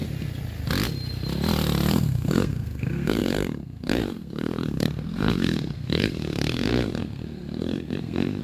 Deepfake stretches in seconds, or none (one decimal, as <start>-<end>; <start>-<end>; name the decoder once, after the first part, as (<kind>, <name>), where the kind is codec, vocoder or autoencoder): 1.9-8.4 (codec, SNAC)